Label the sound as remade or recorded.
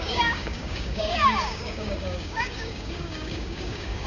remade